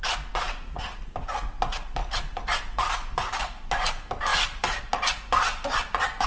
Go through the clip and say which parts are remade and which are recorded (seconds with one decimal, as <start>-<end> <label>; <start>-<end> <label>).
0.0-2.0 recorded; 2.0-3.4 remade; 3.4-4.3 recorded; 4.3-4.8 remade; 4.8-6.3 recorded